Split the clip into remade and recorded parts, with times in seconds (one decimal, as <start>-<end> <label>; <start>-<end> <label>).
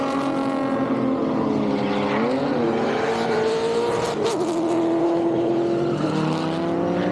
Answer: 0.0-5.0 recorded; 5.0-5.5 remade; 5.5-7.1 recorded